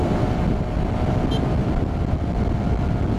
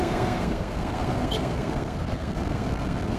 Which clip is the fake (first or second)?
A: second